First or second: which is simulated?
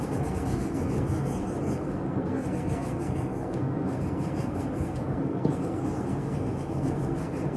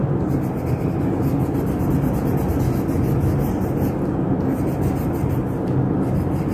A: first